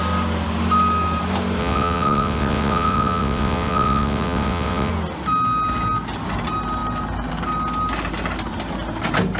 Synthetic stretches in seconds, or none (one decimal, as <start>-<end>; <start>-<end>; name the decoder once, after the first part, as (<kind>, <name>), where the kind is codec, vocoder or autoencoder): 1.6-4.9 (vocoder, WaveNeXt)